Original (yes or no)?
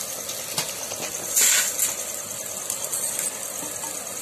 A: yes